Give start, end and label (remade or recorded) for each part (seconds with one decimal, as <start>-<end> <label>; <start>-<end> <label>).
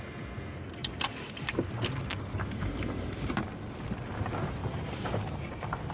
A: 0.0-0.8 recorded; 0.8-3.9 remade; 3.9-4.6 recorded; 4.6-5.9 remade